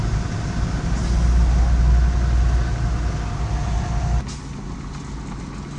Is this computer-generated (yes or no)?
no